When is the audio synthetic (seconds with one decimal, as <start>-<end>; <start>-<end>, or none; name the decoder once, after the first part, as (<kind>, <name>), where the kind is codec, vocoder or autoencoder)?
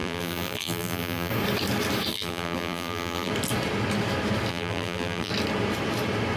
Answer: 0.0-1.3 (vocoder, BigVGAN v2); 2.1-3.3; 4.5-5.3